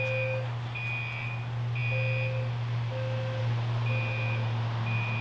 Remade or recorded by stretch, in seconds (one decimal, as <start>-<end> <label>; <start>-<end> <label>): 0.0-5.2 recorded